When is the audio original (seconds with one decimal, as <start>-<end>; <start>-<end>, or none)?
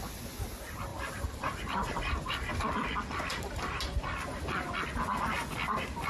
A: 0.0-0.9; 2.5-3.3; 4.1-6.1